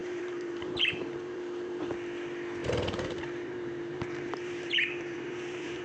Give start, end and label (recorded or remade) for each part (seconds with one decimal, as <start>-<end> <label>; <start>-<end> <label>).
0.0-1.9 remade; 1.9-2.6 recorded; 2.6-5.8 remade